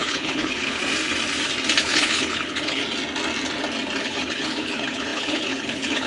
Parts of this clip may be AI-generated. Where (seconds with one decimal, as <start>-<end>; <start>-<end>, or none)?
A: 0.0-0.8; 1.8-2.8; 4.0-6.1